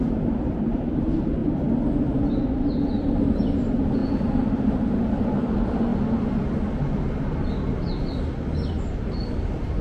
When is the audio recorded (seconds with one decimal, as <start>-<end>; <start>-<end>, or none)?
1.4-3.4; 5.9-9.0